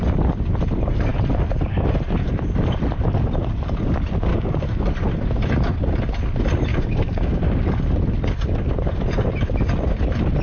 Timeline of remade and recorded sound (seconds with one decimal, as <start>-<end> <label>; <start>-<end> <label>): 0.0-4.3 recorded; 4.3-4.8 remade; 4.8-6.7 recorded; 6.7-7.4 remade; 7.4-10.4 recorded